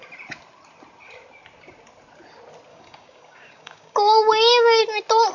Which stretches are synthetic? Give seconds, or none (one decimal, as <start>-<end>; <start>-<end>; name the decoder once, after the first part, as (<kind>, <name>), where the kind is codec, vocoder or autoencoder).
2.7-4.8 (codec, DAC)